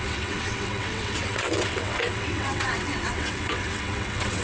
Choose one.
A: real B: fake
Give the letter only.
B